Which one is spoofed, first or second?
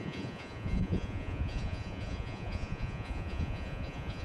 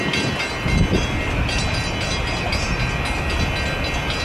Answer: first